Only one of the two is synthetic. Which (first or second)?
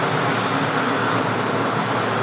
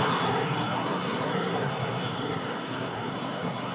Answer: second